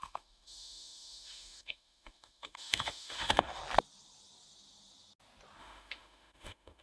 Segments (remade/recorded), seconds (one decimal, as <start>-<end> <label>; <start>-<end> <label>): 0.0-3.6 remade; 3.6-5.6 recorded; 5.6-6.8 remade